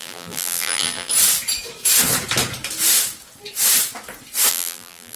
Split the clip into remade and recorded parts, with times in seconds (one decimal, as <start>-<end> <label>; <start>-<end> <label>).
0.0-1.1 remade; 1.1-4.5 recorded; 4.5-5.2 remade